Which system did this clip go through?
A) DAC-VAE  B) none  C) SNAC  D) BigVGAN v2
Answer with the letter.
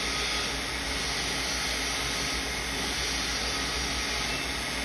B